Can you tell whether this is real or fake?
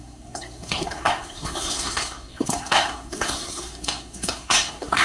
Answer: fake